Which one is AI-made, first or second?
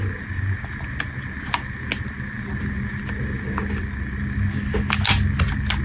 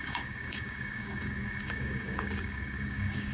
second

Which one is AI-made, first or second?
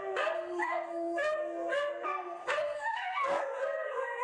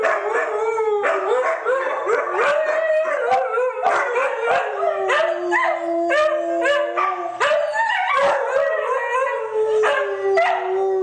first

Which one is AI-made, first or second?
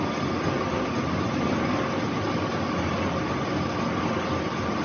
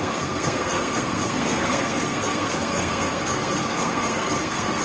second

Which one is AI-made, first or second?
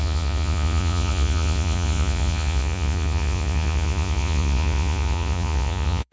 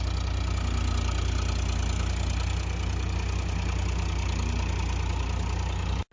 first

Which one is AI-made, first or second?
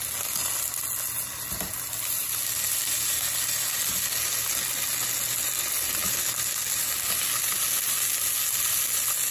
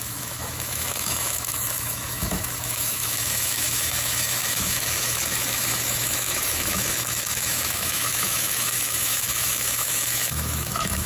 second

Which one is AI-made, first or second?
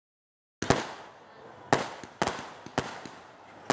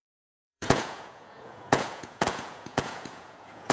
second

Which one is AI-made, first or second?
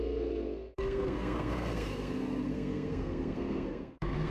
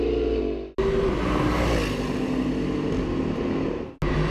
first